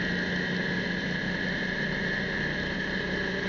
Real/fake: real